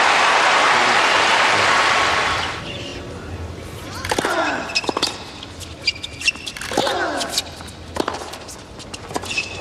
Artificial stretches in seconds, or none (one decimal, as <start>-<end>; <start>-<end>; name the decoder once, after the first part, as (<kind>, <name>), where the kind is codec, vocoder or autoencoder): 0.0-2.9 (vocoder, BigVGAN v2); 5.1-6.8; 8.0-9.6